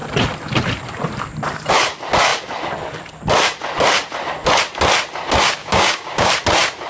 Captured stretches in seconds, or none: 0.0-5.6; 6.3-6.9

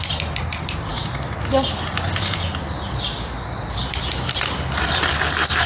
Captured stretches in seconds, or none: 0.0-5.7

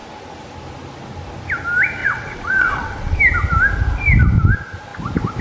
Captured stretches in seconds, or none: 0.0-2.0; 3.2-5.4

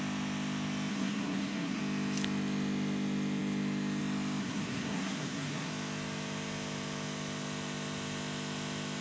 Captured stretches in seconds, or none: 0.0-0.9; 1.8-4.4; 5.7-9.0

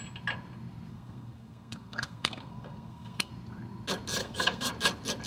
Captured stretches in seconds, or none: 0.0-0.9; 3.3-4.2; 4.7-5.3

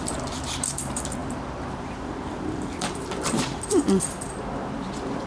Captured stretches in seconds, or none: none

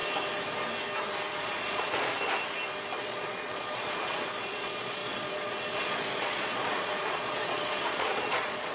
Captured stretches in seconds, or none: 0.0-1.3; 2.1-3.0